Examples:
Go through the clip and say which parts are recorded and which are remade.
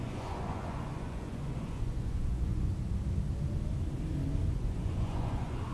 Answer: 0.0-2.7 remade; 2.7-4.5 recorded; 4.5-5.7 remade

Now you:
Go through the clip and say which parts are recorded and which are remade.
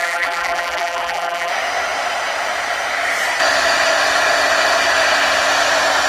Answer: 0.0-1.5 remade; 1.5-6.1 recorded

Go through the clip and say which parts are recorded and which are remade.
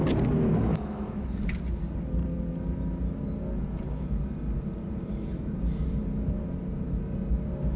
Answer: 0.0-0.7 recorded; 0.7-1.3 remade; 1.3-7.8 recorded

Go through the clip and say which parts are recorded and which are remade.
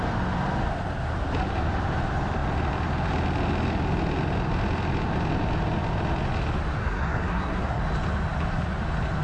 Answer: 0.0-6.8 recorded; 6.8-7.8 remade; 7.8-9.2 recorded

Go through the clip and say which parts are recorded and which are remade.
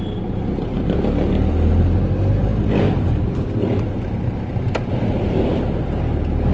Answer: 0.0-0.7 recorded; 0.7-1.3 remade; 1.3-2.4 recorded; 2.4-5.8 remade; 5.8-6.5 recorded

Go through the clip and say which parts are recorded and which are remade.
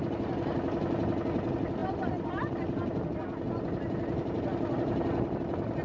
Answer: 0.0-5.8 recorded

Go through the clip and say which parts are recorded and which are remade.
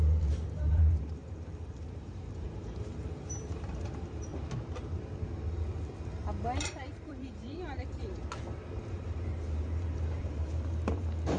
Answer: 0.0-4.3 remade; 4.3-6.6 recorded; 6.6-8.2 remade; 8.2-8.9 recorded; 8.9-11.4 remade